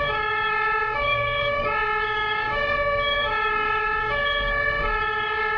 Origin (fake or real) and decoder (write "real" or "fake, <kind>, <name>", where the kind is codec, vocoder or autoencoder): fake, codec, DAC